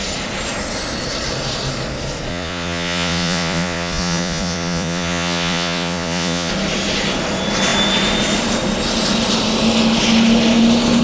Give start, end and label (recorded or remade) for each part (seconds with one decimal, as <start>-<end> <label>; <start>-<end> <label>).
0.0-2.3 recorded; 2.3-6.5 remade; 6.5-11.0 recorded